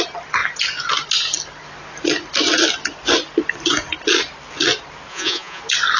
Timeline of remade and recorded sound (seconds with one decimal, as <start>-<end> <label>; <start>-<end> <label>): 0.0-5.1 recorded; 5.1-5.6 remade; 5.6-6.0 recorded